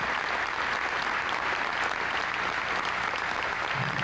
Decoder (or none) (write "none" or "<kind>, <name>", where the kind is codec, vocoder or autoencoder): none